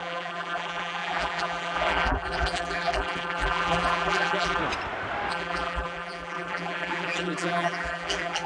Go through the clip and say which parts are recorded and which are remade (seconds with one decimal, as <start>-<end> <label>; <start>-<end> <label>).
0.0-4.6 remade; 4.6-5.3 recorded; 5.3-8.5 remade